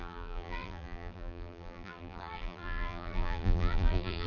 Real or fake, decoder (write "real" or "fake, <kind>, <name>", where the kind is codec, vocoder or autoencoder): fake, vocoder, BigVGAN v2